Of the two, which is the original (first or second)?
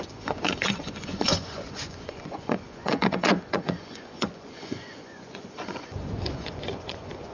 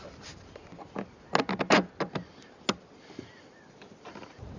second